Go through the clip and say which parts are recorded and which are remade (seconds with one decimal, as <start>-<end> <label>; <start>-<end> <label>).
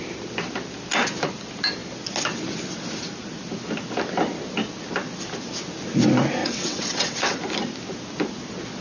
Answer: 0.0-6.4 recorded; 6.4-7.4 remade; 7.4-8.8 recorded